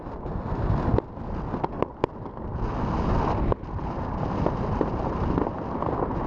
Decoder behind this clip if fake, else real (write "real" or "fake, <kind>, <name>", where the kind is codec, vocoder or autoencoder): real